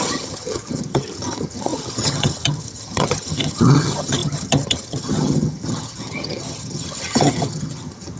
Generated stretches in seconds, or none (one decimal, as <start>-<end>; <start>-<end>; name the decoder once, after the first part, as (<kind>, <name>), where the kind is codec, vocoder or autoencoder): 0.0-8.2 (vocoder, HiFi-GAN)